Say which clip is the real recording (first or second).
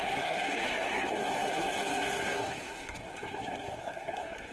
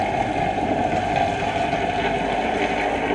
second